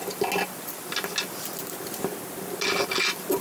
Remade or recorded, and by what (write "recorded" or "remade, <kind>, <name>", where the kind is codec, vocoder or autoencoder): recorded